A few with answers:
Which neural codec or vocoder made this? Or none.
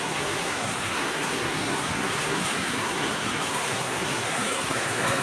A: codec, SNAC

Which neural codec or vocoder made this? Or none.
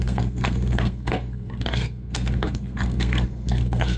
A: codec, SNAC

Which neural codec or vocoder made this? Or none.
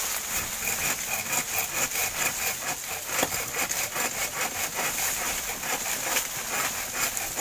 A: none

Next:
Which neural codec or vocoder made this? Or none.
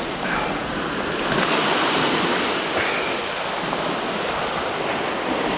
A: none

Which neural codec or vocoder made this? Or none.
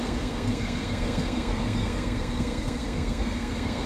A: codec, SNAC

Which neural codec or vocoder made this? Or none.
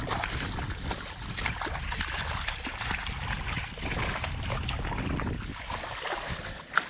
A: none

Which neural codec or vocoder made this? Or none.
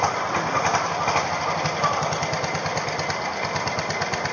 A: none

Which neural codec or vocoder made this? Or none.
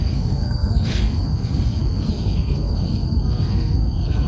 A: codec, SNAC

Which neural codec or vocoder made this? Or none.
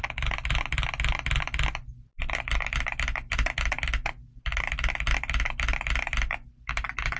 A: none